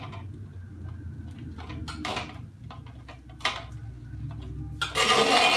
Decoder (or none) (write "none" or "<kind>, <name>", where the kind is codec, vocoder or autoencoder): none